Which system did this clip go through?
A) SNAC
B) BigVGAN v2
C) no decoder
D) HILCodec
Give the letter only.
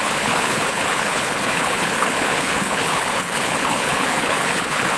D